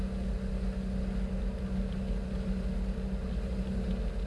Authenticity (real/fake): real